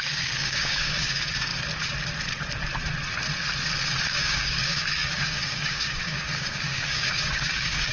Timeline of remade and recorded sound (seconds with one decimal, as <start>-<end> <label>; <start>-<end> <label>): 0.0-1.5 remade; 1.5-4.2 recorded; 4.2-7.9 remade